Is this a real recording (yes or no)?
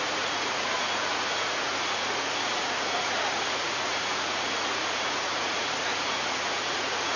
no